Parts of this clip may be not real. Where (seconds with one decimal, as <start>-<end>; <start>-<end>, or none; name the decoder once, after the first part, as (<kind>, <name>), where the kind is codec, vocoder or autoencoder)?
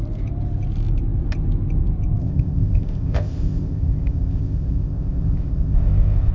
2.2-6.3 (codec, ZipCodec)